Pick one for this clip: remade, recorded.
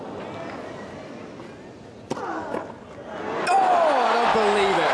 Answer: recorded